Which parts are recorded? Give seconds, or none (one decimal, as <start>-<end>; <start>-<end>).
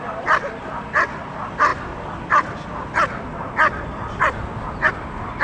0.0-5.4